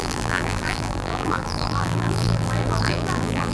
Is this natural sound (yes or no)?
no